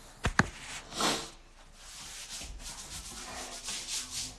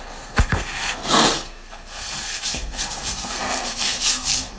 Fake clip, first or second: second